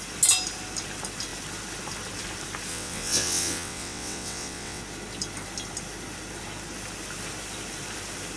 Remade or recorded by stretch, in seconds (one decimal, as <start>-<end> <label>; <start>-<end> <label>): 0.0-2.7 recorded; 2.7-4.8 remade; 4.8-8.4 recorded